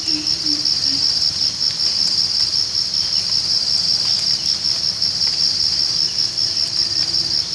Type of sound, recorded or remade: recorded